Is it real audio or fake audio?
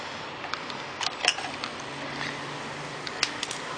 real